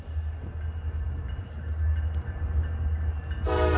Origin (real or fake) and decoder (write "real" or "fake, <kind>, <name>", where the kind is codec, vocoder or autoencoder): real